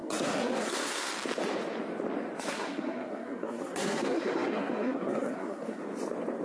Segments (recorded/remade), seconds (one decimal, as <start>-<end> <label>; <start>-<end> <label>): 0.0-1.1 remade; 1.1-2.5 recorded; 2.5-5.8 remade; 5.8-6.4 recorded